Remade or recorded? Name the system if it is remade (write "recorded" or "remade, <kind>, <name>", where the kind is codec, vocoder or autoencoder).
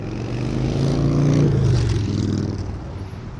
recorded